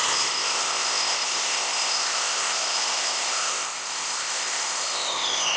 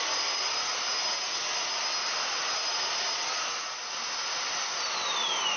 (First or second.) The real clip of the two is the second